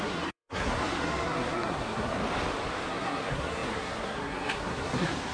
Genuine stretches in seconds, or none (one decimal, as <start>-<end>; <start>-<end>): 2.2-2.9